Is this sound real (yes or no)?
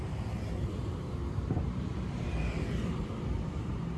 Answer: no